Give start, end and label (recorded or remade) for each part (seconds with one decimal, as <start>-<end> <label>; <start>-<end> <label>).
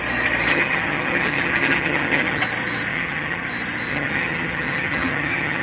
0.0-0.5 recorded; 0.5-2.4 remade; 2.4-2.9 recorded; 2.9-3.5 remade; 3.5-3.9 recorded; 3.9-5.6 remade